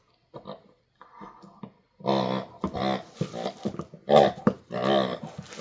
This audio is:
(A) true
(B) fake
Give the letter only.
A